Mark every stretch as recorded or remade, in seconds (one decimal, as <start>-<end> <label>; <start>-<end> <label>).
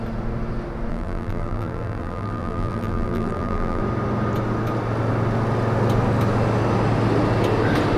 0.0-0.9 recorded; 0.9-3.8 remade; 3.8-8.0 recorded